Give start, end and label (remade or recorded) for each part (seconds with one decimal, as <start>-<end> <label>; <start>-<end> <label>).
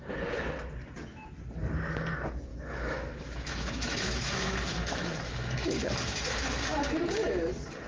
0.0-2.5 recorded; 2.5-6.8 remade; 6.8-7.9 recorded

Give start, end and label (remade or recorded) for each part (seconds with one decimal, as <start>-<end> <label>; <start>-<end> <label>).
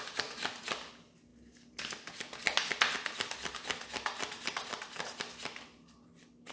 0.0-6.5 recorded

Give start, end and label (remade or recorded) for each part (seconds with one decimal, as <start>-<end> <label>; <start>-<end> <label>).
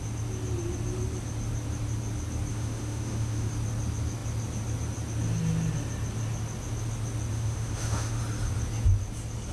0.0-2.5 recorded; 2.5-3.5 remade; 3.5-7.3 recorded; 7.3-8.2 remade; 8.2-9.5 recorded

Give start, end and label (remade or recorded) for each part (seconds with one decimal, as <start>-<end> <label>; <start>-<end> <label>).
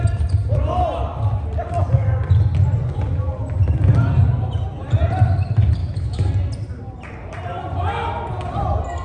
0.0-5.8 recorded; 5.8-6.3 remade; 6.3-9.0 recorded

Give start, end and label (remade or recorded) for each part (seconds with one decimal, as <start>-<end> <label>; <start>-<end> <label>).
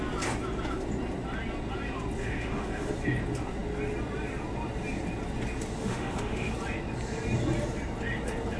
0.0-2.2 recorded; 2.2-2.9 remade; 2.9-5.8 recorded; 5.8-6.5 remade; 6.5-8.6 recorded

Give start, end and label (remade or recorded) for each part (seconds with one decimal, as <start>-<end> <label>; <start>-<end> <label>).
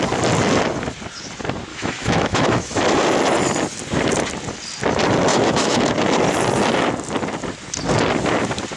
0.0-1.7 recorded; 1.7-2.8 remade; 2.8-5.3 recorded; 5.3-5.9 remade; 5.9-8.8 recorded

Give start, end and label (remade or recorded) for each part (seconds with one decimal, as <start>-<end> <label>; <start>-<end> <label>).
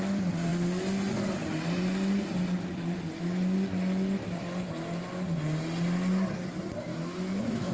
0.0-6.9 recorded; 6.9-7.7 remade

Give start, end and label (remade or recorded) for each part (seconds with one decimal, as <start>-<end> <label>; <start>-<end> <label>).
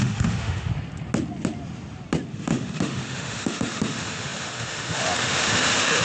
0.0-0.7 remade; 0.7-2.3 recorded; 2.3-6.0 remade